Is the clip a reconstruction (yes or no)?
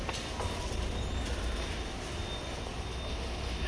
no